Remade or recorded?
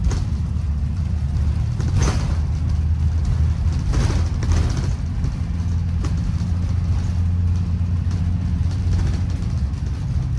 recorded